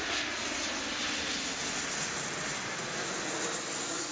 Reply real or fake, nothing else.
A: real